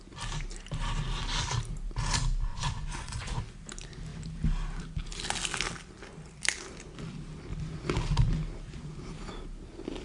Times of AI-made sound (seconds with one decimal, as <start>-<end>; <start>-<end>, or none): 2.5-3.4